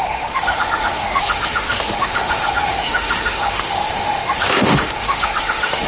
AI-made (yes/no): yes